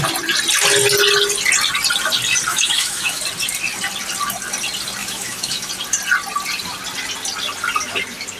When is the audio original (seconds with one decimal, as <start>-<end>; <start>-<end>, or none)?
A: 0.0-2.5; 3.2-5.0; 5.7-8.4